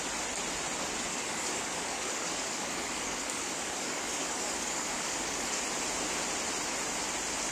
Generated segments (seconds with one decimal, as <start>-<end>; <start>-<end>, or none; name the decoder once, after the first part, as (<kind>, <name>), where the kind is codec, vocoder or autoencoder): 1.1-5.6 (codec, DAC)